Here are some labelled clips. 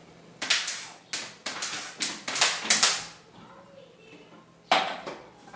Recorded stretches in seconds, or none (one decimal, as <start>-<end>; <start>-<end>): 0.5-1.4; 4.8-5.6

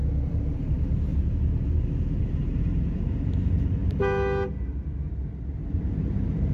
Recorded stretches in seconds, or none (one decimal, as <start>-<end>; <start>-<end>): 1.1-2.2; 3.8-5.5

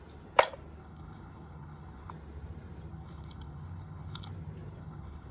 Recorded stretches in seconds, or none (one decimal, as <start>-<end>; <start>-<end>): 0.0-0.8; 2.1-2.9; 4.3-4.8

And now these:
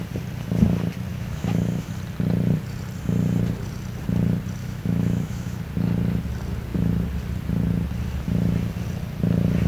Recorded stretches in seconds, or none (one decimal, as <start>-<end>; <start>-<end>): 0.0-1.1; 1.9-4.6; 5.6-9.7

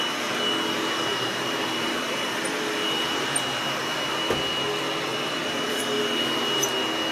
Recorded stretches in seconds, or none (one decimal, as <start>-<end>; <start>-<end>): 0.0-1.1; 2.4-5.1; 5.8-7.1

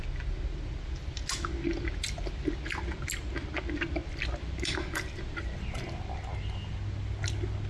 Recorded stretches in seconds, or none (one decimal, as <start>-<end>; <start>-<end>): 0.0-7.7

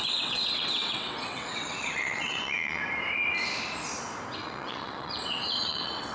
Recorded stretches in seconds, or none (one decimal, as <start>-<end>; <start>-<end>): 2.8-4.4

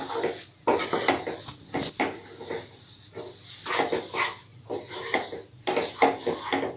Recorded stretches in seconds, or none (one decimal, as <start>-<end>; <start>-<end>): 0.0-4.5; 5.6-6.8